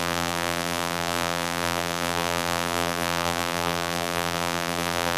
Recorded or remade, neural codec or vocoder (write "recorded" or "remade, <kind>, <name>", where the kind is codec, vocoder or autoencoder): remade, vocoder, BigVGAN v2